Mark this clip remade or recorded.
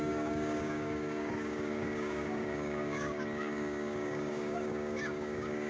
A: remade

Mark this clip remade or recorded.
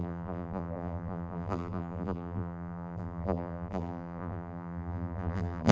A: remade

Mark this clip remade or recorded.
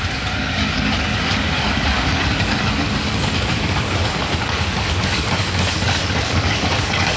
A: remade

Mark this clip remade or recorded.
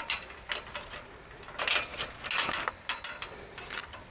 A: recorded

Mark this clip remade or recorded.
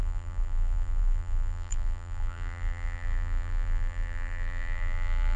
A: remade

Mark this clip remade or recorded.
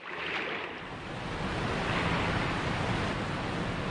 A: recorded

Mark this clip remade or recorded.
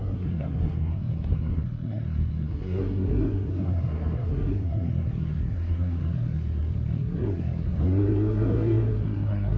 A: remade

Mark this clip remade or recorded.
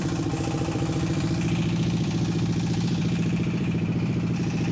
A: remade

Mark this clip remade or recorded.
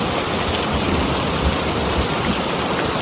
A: recorded